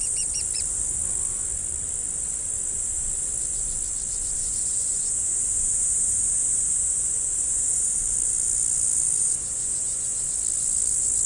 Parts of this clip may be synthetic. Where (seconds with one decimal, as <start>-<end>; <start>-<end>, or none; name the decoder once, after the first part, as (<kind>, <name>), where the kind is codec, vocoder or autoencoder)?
4.4-8.0 (vocoder, Vocos); 9.2-10.2